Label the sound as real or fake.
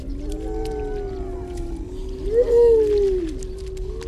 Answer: real